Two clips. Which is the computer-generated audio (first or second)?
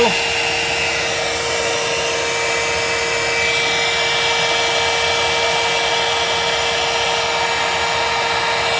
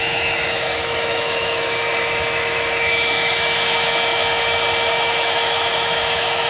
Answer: second